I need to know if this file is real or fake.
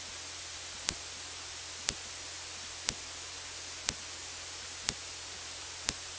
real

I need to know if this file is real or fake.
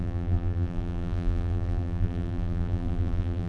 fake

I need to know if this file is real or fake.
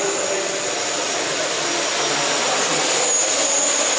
real